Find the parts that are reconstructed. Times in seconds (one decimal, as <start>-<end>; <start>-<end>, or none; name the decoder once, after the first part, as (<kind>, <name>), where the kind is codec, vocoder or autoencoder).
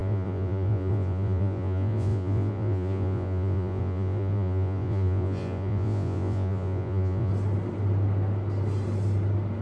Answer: 0.0-7.3 (vocoder, Vocos)